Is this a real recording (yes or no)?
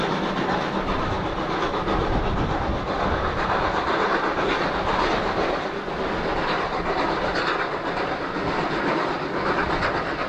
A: yes